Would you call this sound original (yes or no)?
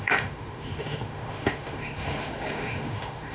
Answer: no